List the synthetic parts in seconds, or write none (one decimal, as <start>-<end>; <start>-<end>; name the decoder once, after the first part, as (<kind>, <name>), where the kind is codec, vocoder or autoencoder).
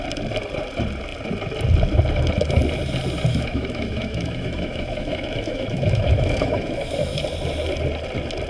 3.3-7.2 (autoencoder, DAC-VAE)